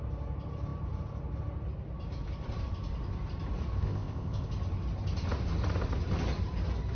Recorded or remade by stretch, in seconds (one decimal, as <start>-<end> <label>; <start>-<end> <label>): 0.0-3.8 recorded; 3.8-4.5 remade; 4.5-7.0 recorded